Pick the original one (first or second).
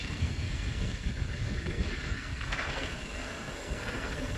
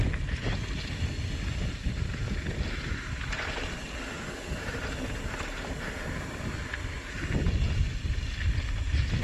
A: second